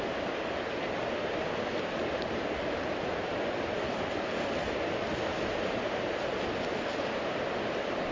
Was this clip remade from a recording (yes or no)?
no